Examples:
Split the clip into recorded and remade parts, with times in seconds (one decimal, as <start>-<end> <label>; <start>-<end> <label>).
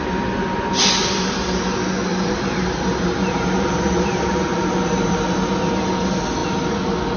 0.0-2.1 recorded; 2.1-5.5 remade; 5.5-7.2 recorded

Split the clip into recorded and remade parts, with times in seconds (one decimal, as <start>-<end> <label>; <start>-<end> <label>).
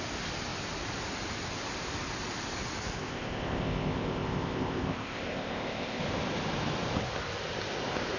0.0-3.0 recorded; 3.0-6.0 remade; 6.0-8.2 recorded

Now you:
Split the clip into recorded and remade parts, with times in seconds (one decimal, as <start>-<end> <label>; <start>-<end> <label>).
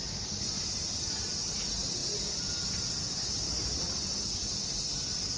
0.0-5.4 recorded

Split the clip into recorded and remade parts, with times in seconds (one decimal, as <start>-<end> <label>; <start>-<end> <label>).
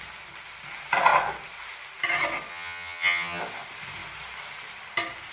0.0-2.5 recorded; 2.5-3.4 remade; 3.4-5.3 recorded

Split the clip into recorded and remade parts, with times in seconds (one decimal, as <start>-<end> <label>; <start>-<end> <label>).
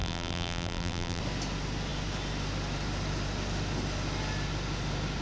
0.0-1.2 remade; 1.2-5.2 recorded